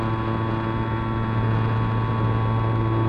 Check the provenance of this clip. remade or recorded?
recorded